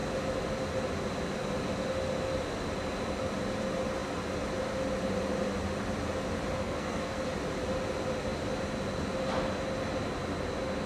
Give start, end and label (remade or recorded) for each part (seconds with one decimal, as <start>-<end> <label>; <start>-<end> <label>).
0.0-6.6 recorded; 6.6-7.2 remade; 7.2-10.9 recorded